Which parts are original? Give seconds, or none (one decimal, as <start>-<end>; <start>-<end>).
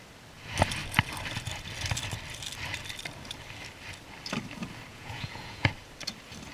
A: 0.0-4.9; 5.7-6.5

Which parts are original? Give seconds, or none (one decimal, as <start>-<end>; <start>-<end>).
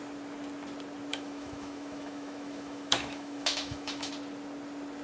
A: 0.0-1.1; 4.1-5.0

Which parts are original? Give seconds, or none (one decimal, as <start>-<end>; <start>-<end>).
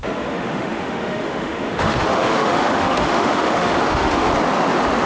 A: 4.3-5.1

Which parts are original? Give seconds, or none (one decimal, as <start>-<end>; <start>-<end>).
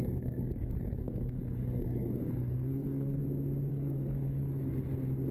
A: 3.2-3.7; 4.7-5.3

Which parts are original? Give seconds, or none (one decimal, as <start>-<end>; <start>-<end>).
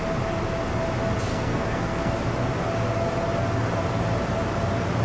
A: 0.0-1.3; 2.2-5.0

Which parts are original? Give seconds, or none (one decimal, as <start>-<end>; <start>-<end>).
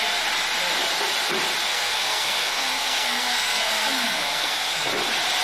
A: 0.0-1.7; 4.9-5.4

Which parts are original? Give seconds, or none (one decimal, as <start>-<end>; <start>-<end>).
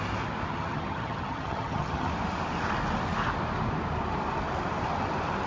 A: 0.0-0.5; 2.1-5.5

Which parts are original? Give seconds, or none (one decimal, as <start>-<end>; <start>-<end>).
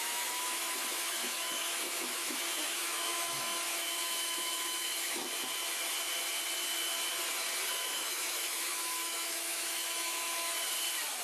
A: 5.2-7.7; 10.5-11.2